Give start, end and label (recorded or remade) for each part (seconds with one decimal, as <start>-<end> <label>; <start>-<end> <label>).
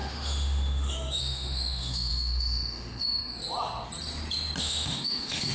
0.0-3.4 remade; 3.4-4.6 recorded; 4.6-5.5 remade